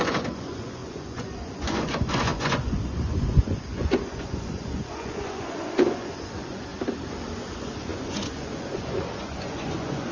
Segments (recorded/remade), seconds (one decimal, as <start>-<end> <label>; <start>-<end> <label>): 0.0-6.7 remade; 6.7-7.4 recorded; 7.4-10.1 remade